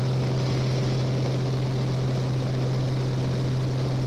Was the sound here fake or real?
real